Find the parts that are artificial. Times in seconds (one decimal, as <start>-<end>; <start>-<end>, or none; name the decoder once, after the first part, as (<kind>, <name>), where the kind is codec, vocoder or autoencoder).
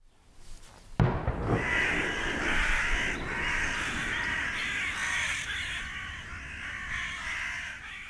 5.0-6.7 (vocoder, BigVGAN v2)